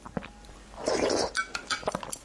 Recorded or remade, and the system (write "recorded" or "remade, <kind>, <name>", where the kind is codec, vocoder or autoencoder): recorded